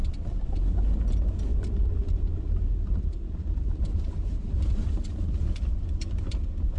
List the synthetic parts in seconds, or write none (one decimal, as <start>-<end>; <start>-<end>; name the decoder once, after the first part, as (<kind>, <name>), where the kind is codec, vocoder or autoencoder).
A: 1.5-5.4 (vocoder, BigVGAN v2)